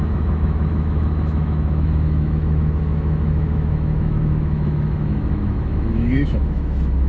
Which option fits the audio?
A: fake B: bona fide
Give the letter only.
A